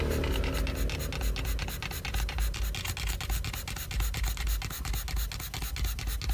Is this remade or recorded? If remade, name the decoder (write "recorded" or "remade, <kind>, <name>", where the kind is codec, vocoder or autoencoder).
recorded